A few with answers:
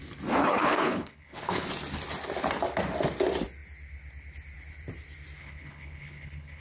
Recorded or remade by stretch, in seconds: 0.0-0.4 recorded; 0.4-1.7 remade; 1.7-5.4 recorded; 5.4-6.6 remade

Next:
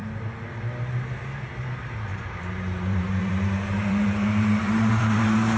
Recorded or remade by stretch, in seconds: 0.0-2.1 recorded; 2.1-5.6 remade

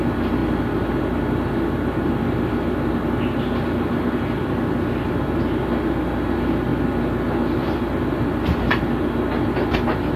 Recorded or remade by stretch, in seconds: 0.0-10.2 recorded

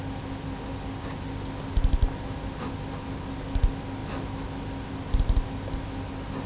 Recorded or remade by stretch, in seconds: 0.0-6.5 recorded

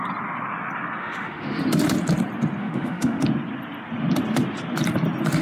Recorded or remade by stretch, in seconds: 0.0-1.0 recorded; 1.0-1.6 remade; 1.6-2.6 recorded; 2.6-3.2 remade; 3.2-5.4 recorded

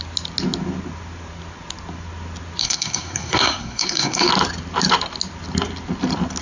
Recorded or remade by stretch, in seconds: 0.0-2.6 recorded; 2.6-4.3 remade; 4.3-6.4 recorded

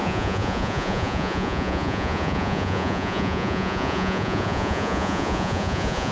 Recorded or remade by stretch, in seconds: 0.0-6.1 remade